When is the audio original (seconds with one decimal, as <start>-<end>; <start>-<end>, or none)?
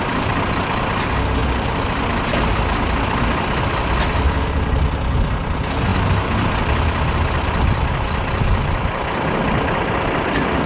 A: 1.4-2.5